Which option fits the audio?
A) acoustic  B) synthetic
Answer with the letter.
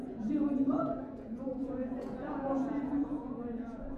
B